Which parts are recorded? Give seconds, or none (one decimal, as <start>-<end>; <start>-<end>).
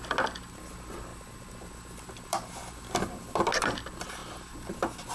0.0-1.1; 1.7-5.1